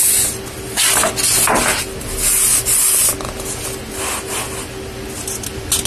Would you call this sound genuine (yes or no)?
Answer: yes